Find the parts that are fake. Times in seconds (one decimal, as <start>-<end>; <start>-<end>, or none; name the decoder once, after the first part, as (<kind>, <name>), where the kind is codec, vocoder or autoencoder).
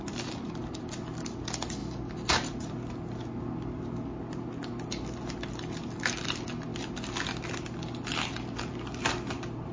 none